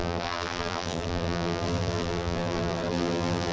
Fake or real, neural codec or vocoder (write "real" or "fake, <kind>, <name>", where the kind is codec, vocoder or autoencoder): fake, vocoder, BigVGAN v2